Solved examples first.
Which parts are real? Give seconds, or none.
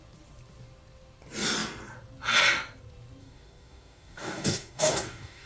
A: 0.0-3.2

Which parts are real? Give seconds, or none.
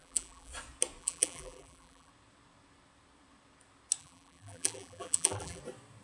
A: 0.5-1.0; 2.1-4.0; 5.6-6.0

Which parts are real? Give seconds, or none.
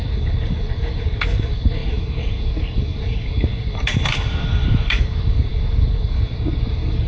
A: none